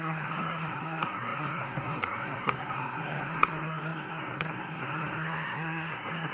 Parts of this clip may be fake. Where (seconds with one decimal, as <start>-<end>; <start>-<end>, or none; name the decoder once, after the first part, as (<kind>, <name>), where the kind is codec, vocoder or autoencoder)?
0.0-6.3 (codec, SNAC)